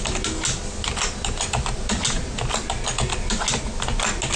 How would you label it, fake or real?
real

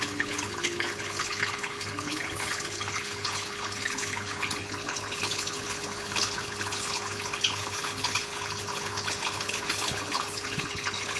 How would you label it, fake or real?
fake